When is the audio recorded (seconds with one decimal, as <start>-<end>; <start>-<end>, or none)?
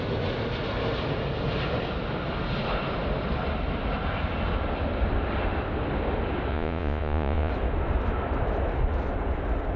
0.0-6.5; 7.5-9.8